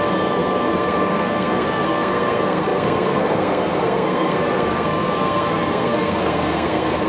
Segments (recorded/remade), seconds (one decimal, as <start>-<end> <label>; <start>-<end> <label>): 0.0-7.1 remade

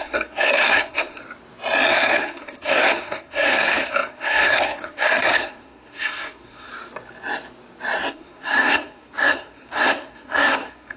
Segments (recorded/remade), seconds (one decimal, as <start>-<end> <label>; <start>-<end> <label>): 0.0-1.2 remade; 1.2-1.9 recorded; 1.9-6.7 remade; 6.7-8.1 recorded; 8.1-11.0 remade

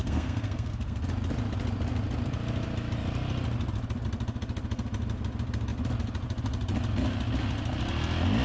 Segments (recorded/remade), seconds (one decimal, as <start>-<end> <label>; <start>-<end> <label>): 0.0-1.0 remade; 1.0-8.4 recorded

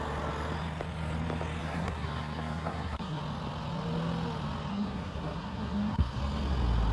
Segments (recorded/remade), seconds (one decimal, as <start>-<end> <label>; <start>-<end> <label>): 0.0-1.6 recorded; 1.6-3.2 remade; 3.2-4.7 recorded; 4.7-6.2 remade; 6.2-6.9 recorded

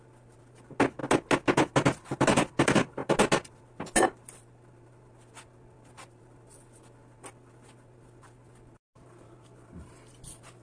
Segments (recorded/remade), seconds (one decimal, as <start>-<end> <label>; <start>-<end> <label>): 0.0-10.6 recorded

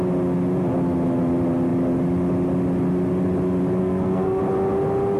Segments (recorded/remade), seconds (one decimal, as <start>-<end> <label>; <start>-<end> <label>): 0.0-3.8 recorded; 3.8-4.4 remade; 4.4-5.2 recorded